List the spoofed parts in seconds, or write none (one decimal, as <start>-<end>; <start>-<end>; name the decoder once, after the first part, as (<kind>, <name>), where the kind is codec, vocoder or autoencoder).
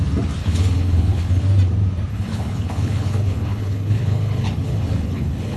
0.4-1.4 (codec, HILCodec); 2.1-5.6